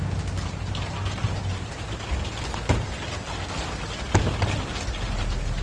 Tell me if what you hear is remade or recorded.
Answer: recorded